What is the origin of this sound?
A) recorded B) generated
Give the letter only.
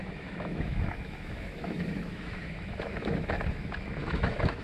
B